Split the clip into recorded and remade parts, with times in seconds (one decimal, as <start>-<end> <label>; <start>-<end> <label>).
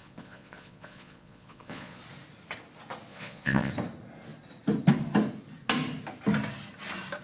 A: 0.0-2.0 remade; 2.0-3.1 recorded; 3.1-3.7 remade; 3.7-7.2 recorded